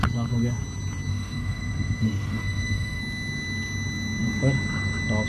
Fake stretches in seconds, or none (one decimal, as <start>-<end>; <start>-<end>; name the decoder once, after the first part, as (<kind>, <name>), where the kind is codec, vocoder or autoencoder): 1.1-3.0 (autoencoder, DAC-VAE)